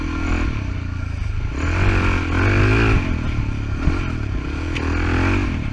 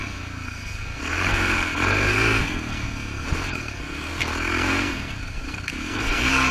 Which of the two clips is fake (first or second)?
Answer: second